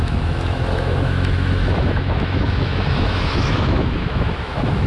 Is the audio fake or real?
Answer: fake